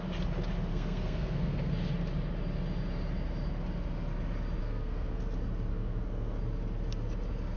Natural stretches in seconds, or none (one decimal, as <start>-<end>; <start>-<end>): 0.0-0.7; 1.7-4.6; 5.2-5.7; 6.4-7.6